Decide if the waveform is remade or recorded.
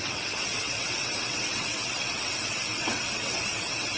remade